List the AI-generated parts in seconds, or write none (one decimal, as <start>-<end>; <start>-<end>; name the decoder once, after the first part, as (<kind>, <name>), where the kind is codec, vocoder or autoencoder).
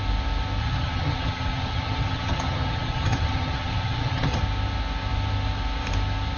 0.6-4.4 (vocoder, HiFi-GAN)